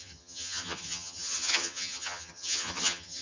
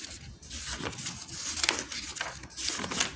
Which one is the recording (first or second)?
second